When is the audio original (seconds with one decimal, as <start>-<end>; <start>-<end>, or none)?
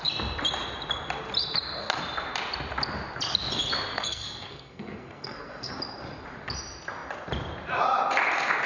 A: 0.0-3.9; 5.7-8.7